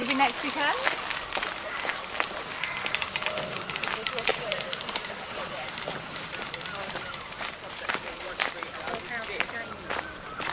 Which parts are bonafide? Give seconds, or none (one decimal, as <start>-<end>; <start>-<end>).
0.0-4.3; 8.7-10.5